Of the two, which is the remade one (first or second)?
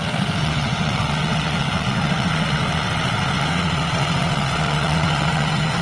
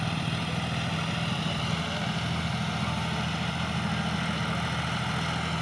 first